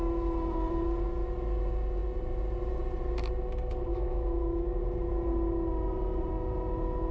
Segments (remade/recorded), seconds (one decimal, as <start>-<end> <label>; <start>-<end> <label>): 0.0-3.9 recorded; 3.9-4.8 remade; 4.8-7.1 recorded